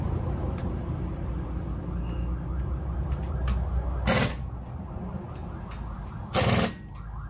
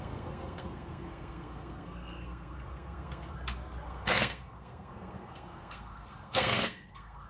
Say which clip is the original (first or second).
first